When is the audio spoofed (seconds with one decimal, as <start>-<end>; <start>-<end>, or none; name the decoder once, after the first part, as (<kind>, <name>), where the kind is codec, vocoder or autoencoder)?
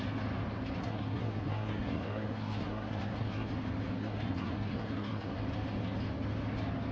0.8-3.5 (codec, SNAC); 4.0-5.4